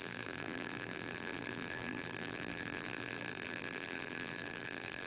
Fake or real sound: fake